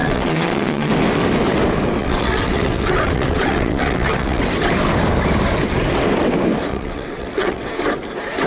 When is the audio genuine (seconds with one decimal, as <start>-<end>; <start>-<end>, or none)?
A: 0.9-2.0; 4.4-6.7; 7.7-8.5